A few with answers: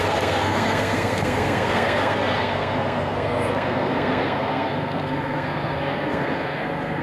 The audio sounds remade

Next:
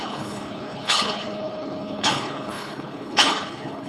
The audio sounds remade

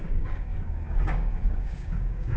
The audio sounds remade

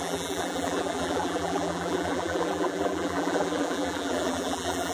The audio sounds remade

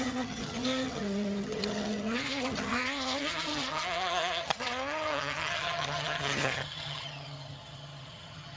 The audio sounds remade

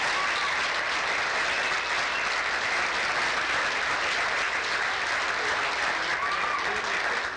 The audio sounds recorded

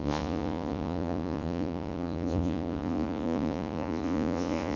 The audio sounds remade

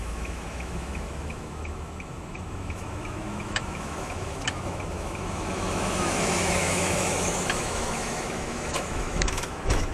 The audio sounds remade